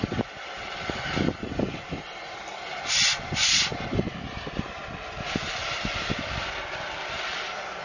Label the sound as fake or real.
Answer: real